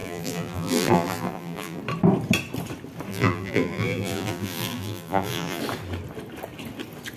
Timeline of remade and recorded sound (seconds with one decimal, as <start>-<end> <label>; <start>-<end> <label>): 0.0-1.8 remade; 1.8-3.1 recorded; 3.1-5.6 remade; 5.6-7.2 recorded